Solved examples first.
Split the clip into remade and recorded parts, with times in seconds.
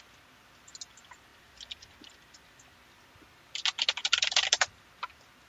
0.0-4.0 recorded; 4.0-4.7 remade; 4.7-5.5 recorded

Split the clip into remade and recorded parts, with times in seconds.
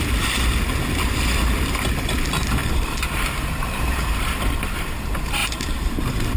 0.0-2.6 recorded; 2.6-4.4 remade; 4.4-5.4 recorded; 5.4-5.9 remade; 5.9-6.4 recorded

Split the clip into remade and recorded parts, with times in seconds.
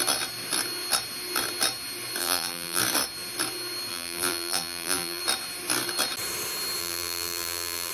0.0-2.2 recorded; 2.2-2.8 remade; 2.8-3.9 recorded; 3.9-5.2 remade; 5.2-6.8 recorded; 6.8-7.9 remade